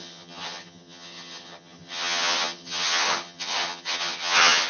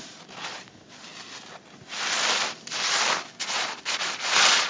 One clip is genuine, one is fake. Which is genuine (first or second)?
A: second